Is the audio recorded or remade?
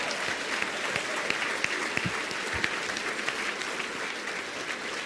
recorded